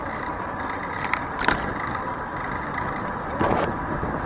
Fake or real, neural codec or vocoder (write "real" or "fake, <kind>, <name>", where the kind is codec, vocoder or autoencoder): fake, vocoder, BigVGAN v2